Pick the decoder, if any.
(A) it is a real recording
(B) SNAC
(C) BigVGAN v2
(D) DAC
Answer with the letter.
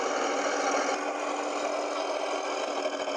A